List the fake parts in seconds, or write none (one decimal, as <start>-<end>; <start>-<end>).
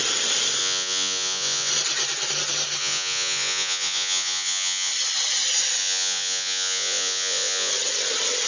0.6-1.7; 2.8-4.9; 5.8-7.7